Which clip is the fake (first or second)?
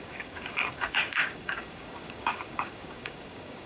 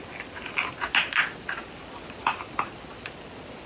first